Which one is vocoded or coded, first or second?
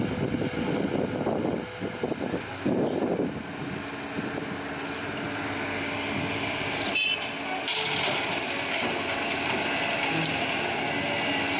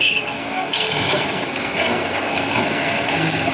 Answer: second